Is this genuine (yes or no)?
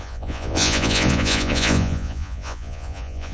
no